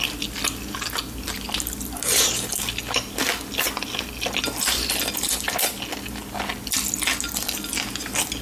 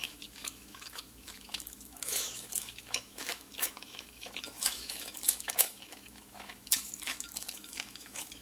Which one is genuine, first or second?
first